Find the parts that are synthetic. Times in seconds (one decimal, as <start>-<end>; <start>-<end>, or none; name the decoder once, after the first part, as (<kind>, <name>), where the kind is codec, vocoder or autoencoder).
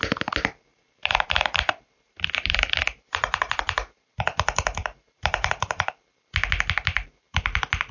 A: 0.7-4.2 (vocoder, BigVGAN v2); 4.8-5.9